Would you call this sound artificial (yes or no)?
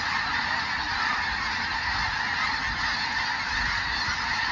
no